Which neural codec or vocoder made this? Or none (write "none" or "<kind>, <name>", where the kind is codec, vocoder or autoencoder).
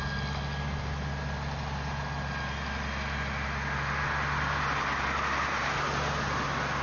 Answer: none